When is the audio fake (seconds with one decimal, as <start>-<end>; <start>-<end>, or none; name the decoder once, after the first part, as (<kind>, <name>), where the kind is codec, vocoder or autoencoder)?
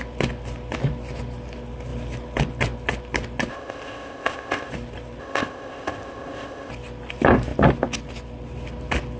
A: 3.5-4.7 (codec, ZipCodec); 5.2-6.7